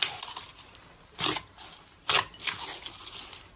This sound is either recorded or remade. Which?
recorded